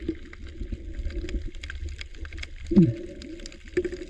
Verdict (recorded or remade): recorded